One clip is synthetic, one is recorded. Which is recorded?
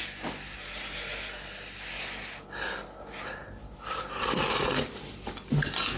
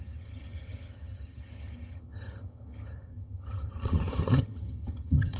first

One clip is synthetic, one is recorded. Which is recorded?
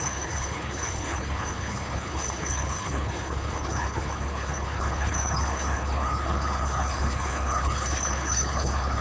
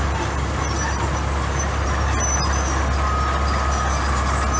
second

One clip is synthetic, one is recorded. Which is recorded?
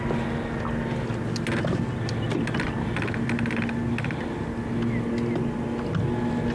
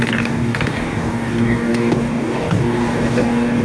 first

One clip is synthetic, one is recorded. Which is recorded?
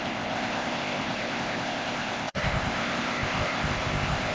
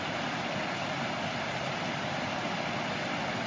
second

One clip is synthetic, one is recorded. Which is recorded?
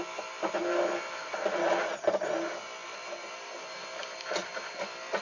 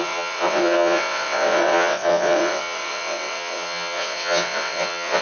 first